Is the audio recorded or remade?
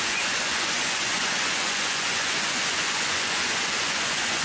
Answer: remade